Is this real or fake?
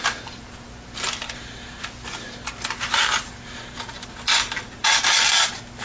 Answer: real